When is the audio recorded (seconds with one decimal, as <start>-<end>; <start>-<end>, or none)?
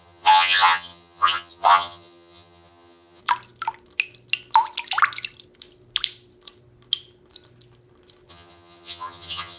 3.2-8.3